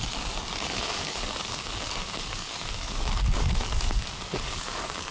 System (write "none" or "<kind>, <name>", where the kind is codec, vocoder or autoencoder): codec, DAC